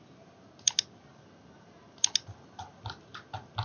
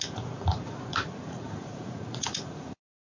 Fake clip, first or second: second